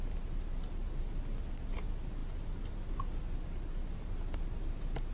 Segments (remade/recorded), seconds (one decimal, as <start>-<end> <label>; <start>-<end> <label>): 0.0-5.1 recorded